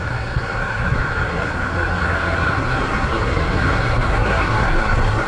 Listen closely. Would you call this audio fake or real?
fake